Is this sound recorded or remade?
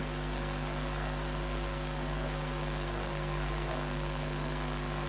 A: remade